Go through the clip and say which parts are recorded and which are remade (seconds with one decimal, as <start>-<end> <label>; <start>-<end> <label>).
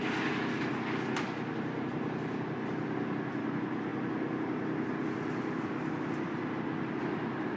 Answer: 0.0-7.6 recorded